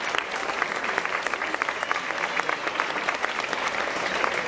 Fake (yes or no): no